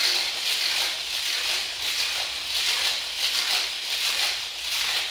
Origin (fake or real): fake